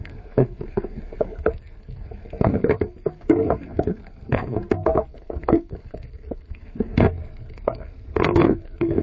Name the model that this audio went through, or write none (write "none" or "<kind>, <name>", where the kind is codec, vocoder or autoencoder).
codec, SNAC